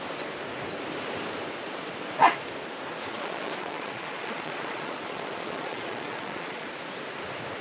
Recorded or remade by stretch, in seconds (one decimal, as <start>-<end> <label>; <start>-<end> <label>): 0.0-3.1 recorded; 3.1-6.7 remade; 6.7-7.6 recorded